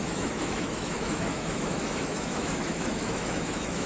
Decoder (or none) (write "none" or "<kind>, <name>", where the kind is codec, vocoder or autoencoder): autoencoder, DAC-VAE